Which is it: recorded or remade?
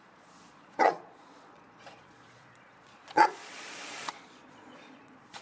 remade